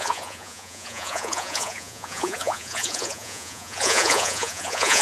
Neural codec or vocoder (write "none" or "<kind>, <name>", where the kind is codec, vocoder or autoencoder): vocoder, Vocos